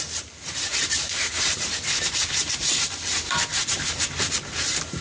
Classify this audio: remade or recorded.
remade